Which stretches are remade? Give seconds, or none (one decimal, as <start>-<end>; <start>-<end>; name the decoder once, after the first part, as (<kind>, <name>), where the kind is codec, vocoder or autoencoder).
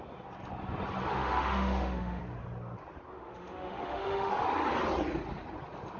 1.1-2.2 (autoencoder, DAC-VAE); 3.1-4.3